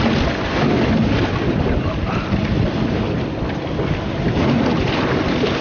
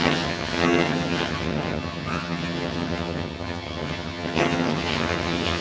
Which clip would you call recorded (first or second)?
first